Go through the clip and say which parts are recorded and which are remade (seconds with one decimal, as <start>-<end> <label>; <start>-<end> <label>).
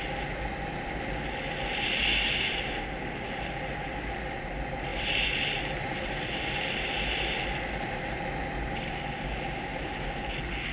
0.0-10.7 recorded